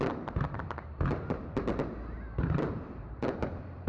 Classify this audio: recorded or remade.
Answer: remade